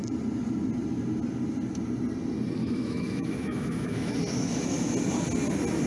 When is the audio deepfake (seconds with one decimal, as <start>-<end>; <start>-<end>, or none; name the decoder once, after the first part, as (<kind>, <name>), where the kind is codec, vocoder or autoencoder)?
2.6-4.2 (autoencoder, DAC-VAE)